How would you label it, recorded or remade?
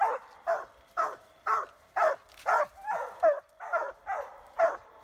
recorded